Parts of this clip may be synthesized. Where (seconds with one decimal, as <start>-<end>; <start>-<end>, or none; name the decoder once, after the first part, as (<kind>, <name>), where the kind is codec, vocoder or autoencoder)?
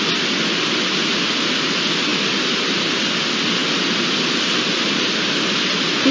none